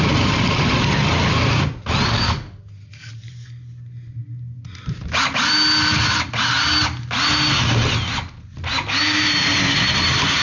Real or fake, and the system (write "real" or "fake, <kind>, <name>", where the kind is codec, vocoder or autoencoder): real